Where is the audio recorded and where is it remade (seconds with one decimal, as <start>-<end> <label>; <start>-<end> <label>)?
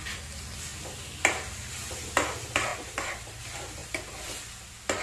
0.0-0.7 remade; 0.7-1.5 recorded; 1.5-3.8 remade; 3.8-4.3 recorded; 4.3-5.0 remade